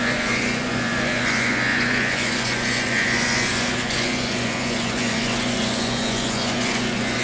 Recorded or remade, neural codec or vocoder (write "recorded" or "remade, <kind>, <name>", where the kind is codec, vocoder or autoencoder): remade, vocoder, Vocos